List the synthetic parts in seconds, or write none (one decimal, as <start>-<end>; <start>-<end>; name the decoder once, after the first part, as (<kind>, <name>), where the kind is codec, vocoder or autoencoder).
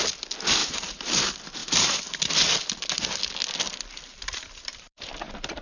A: 0.6-1.2 (vocoder, BigVGAN v2); 1.6-2.2; 4.1-5.6